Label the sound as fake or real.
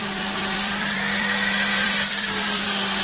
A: fake